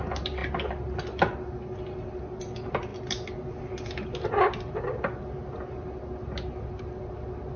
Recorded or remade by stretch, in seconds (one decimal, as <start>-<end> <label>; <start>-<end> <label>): 0.0-7.6 recorded